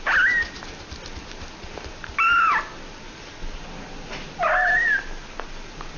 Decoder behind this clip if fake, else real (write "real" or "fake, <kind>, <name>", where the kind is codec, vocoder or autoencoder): real